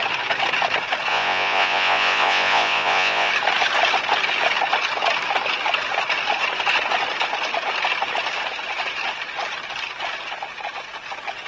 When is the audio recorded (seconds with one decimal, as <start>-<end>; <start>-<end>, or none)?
0.0-1.1; 3.3-11.5